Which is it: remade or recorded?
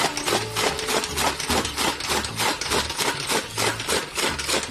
recorded